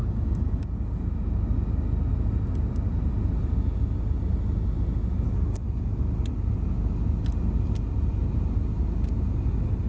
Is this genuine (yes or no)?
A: yes